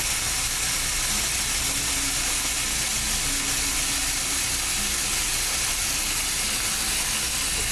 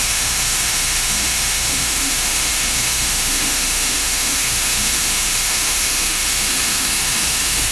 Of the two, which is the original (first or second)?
first